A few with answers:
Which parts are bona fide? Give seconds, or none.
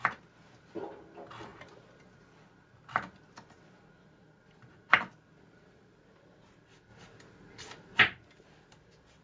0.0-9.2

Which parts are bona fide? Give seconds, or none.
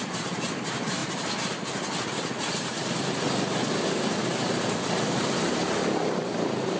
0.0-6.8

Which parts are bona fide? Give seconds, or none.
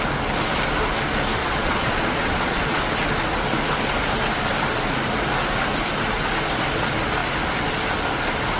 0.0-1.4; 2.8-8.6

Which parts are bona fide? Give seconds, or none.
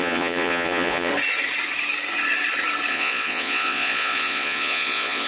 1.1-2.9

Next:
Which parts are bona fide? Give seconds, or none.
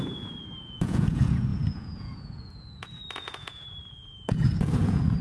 none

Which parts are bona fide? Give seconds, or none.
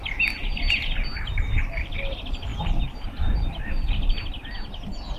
0.0-5.2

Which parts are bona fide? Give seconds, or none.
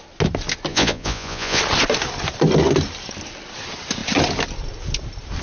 0.0-0.7; 1.6-5.4